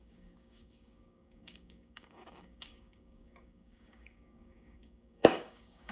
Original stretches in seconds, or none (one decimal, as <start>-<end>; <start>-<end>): none